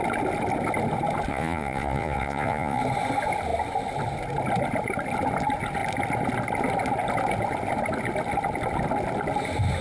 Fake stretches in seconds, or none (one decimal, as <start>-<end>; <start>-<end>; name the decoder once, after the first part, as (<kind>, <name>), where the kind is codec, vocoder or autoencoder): 1.3-2.8 (vocoder, Vocos)